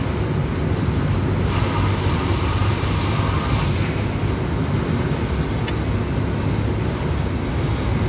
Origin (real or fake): real